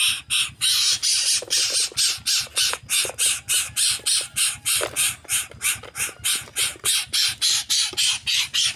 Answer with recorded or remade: recorded